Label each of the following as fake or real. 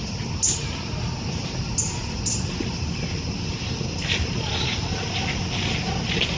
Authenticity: real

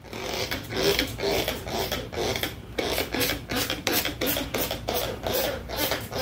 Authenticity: real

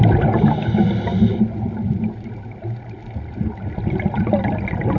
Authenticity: real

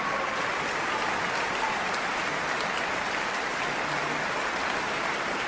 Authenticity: fake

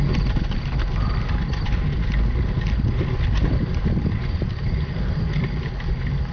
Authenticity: real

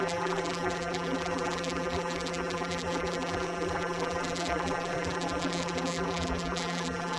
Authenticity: fake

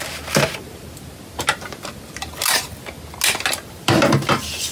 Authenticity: real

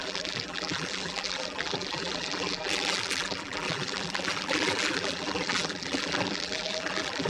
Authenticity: fake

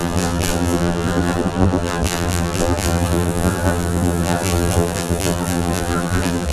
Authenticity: fake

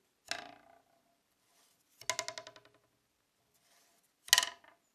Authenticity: real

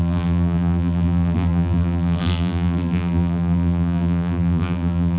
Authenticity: fake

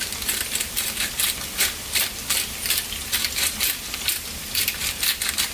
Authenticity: fake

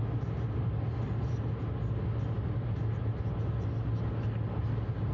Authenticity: real